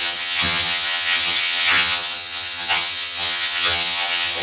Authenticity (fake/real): fake